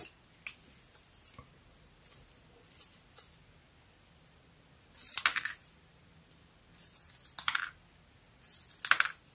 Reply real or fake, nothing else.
real